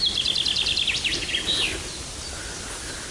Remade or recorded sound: recorded